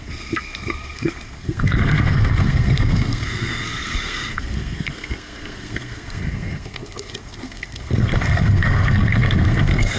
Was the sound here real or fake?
fake